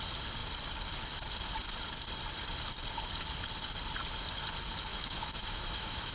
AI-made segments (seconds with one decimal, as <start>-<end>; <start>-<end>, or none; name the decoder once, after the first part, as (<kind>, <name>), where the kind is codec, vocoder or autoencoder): 4.9-6.1 (autoencoder, DAC-VAE)